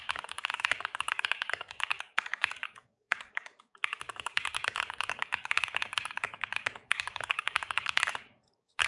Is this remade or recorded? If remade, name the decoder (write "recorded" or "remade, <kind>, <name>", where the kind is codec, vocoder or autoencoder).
remade, codec, DAC